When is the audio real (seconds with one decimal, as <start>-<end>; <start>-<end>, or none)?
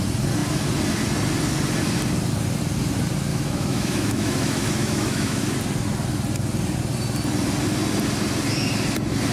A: 0.0-3.3; 5.4-9.3